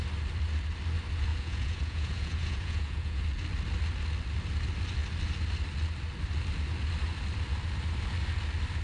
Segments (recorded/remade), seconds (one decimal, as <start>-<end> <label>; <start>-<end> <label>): 0.0-1.3 recorded; 1.3-3.2 remade; 3.2-8.8 recorded